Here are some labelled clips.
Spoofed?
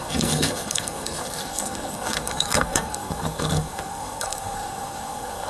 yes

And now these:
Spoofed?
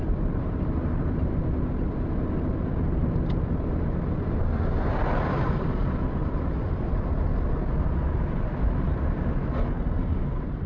no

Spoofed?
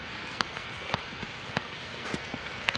yes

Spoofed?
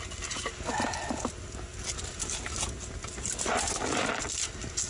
no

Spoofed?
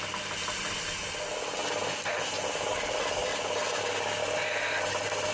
no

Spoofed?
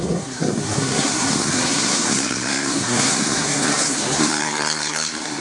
yes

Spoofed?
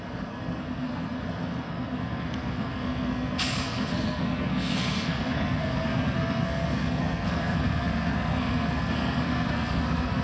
yes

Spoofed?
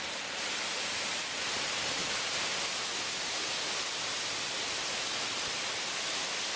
no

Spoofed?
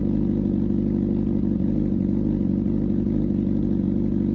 no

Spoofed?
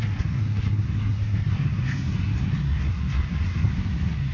yes